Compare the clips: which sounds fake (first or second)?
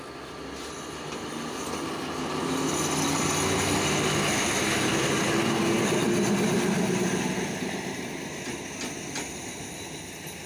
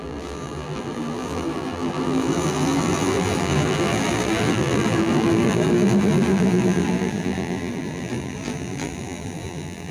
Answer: second